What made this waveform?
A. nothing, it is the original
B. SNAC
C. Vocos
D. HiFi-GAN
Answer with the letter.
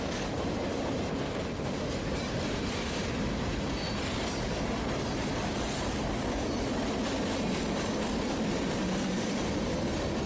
A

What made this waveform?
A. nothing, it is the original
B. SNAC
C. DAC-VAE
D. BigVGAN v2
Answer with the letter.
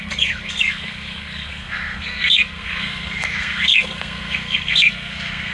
B